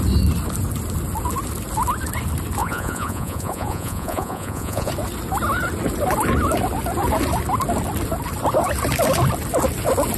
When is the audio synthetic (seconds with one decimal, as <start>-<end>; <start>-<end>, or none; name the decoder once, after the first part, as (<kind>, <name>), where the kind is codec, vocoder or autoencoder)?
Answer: 2.6-4.9 (vocoder, Vocos)

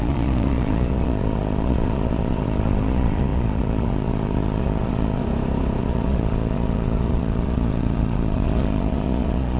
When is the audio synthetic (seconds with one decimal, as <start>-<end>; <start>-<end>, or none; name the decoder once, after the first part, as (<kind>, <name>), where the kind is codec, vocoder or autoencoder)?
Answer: 0.0-5.2 (vocoder, Vocos); 5.8-9.6

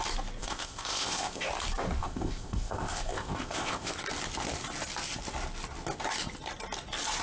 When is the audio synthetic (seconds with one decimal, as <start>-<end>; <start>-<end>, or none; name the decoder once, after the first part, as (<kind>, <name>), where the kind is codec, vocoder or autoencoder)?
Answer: 0.4-1.5 (codec, ZipCodec); 2.0-3.9

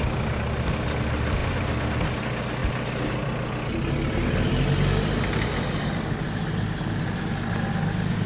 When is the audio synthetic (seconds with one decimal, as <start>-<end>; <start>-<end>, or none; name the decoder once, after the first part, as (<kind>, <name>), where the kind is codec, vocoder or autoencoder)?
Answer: none